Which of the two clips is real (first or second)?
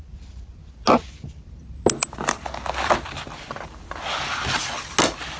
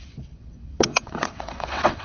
first